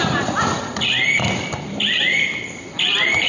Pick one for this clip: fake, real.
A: fake